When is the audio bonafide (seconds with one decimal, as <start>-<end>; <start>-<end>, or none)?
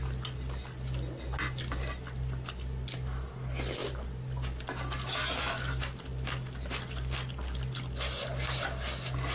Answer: 0.0-9.3